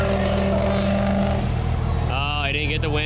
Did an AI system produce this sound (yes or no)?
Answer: no